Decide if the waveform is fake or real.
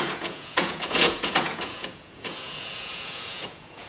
fake